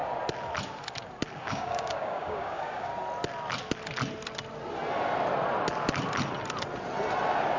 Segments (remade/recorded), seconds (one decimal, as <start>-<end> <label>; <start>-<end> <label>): 0.0-1.4 recorded; 1.4-2.9 remade; 2.9-7.6 recorded